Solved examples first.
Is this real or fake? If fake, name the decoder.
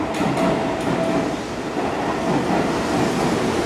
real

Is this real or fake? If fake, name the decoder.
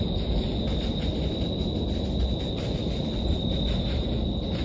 real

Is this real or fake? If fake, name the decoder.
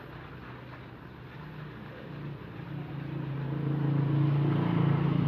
real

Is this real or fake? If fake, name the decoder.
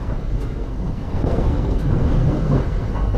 fake, codec, SNAC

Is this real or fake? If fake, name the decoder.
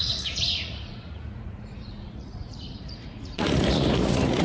fake, vocoder, Vocos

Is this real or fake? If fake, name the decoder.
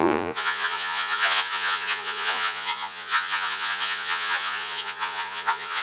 fake, vocoder, Vocos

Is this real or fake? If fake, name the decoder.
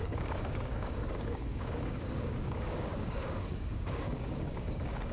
fake, codec, DAC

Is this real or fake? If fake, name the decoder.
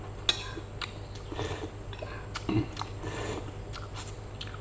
real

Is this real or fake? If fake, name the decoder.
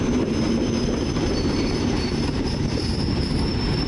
fake, vocoder, BigVGAN v2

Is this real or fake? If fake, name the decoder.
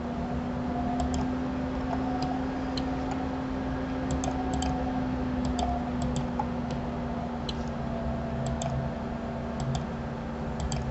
real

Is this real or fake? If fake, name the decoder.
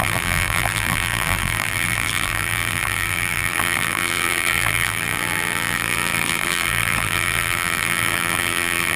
fake, vocoder, BigVGAN v2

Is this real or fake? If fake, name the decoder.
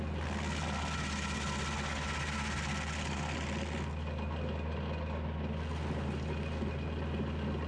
real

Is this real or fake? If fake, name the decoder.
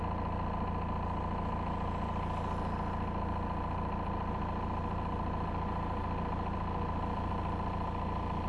real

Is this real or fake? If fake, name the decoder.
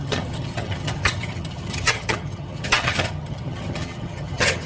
fake, vocoder, HiFi-GAN